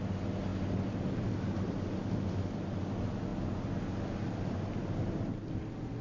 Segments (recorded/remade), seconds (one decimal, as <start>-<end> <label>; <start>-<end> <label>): 0.0-6.0 recorded